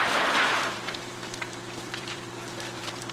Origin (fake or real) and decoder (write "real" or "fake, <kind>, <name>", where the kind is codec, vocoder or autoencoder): fake, vocoder, BigVGAN v2